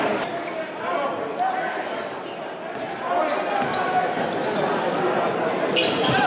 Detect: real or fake real